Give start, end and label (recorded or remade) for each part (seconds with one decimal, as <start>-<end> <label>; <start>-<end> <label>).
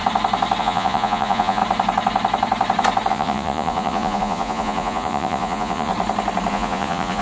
0.0-0.6 recorded; 0.6-1.6 remade; 1.6-3.1 recorded; 3.1-5.9 remade; 5.9-6.5 recorded; 6.5-7.2 remade